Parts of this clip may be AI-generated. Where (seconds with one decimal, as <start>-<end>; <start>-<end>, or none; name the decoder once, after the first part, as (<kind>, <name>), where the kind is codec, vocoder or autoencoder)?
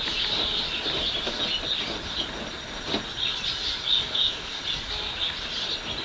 4.0-4.6 (codec, DAC)